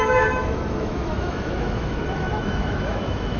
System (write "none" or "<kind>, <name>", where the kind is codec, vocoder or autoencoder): autoencoder, DAC-VAE